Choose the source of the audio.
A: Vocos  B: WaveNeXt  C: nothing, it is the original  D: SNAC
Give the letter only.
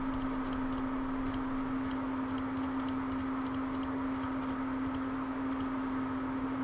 C